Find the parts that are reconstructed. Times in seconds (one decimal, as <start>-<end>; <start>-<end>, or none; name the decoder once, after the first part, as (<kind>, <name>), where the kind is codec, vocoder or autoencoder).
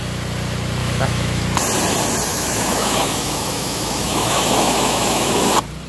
0.8-1.4 (autoencoder, DAC-VAE); 2.3-5.5